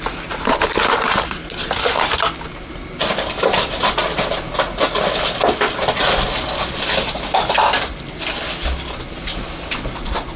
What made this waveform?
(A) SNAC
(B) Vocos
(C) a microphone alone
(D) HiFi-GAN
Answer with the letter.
C